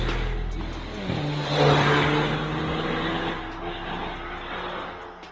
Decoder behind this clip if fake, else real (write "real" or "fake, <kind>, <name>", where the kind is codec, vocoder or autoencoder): real